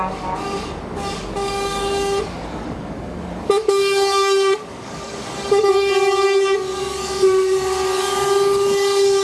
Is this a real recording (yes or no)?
no